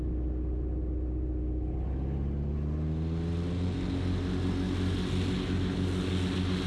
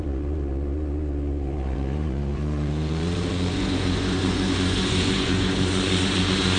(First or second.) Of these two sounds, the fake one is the second